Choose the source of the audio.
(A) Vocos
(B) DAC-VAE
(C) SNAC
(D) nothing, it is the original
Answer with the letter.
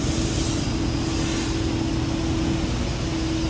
D